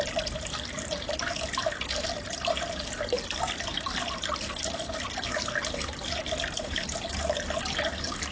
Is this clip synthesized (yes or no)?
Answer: no